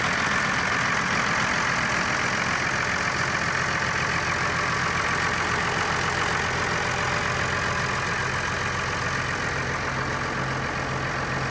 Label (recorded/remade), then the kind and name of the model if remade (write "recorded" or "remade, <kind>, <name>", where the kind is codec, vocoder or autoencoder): recorded